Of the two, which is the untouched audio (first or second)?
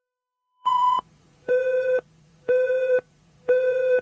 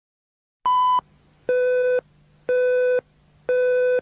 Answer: second